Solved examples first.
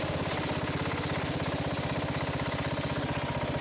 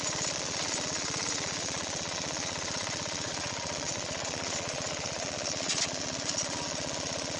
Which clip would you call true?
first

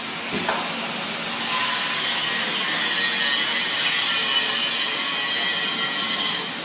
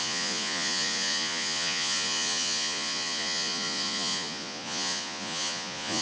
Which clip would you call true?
first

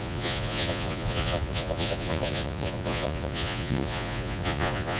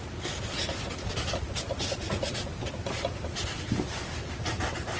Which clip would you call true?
second